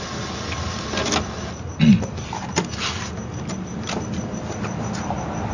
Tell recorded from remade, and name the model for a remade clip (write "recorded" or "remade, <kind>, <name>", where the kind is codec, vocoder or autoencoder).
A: recorded